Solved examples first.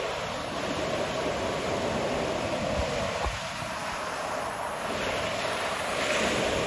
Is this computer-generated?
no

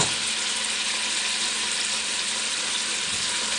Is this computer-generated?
no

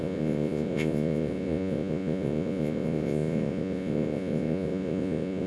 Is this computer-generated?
yes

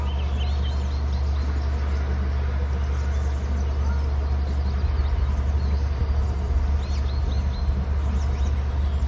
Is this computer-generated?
no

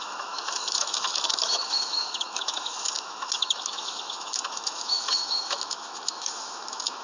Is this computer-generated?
yes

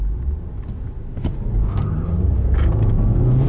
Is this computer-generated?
no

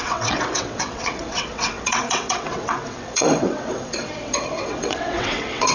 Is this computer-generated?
yes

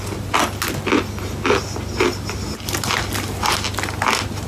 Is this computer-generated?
no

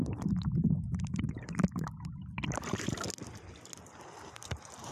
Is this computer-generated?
no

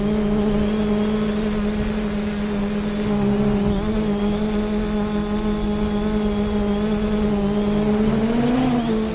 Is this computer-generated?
no